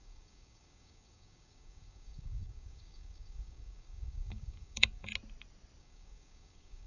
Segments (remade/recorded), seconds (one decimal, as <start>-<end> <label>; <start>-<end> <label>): 0.0-5.1 remade; 5.1-5.8 recorded; 5.8-6.9 remade